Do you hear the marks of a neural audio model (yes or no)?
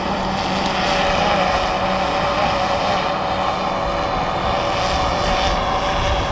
no